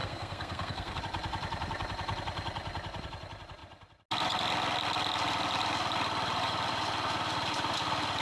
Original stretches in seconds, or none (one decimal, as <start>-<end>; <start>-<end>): 1.0-8.2